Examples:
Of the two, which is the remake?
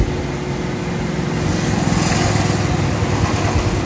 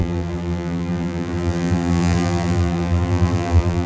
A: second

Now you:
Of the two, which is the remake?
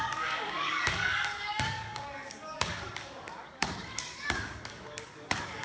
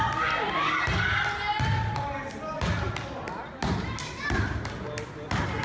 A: first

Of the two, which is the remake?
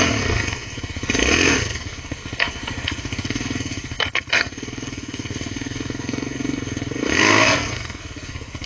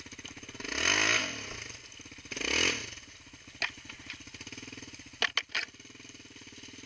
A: first